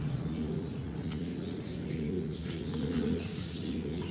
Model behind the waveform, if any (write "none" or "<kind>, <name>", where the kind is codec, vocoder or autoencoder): vocoder, Vocos